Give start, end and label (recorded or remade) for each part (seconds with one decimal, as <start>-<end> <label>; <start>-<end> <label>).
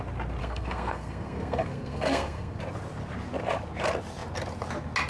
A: 0.0-0.4 recorded; 0.4-2.6 remade; 2.6-5.1 recorded